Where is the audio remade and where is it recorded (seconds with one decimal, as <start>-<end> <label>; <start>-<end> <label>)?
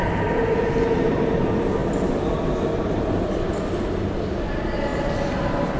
0.0-5.8 recorded